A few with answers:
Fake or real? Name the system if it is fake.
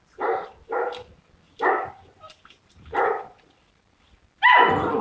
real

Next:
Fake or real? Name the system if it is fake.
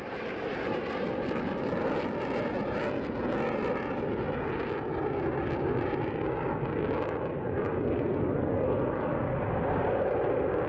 real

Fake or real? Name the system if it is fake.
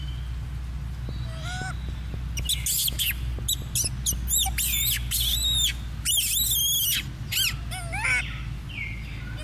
real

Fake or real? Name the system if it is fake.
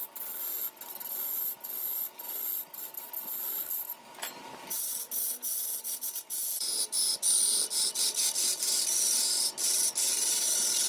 real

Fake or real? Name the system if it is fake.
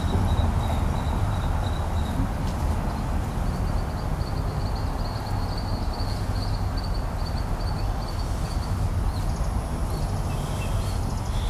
real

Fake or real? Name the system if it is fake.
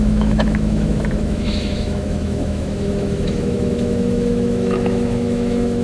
fake, autoencoder, DAC-VAE